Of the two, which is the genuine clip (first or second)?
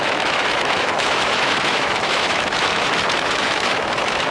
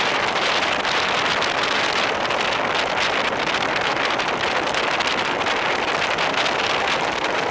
second